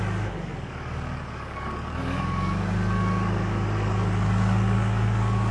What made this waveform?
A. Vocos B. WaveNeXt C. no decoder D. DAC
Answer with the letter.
D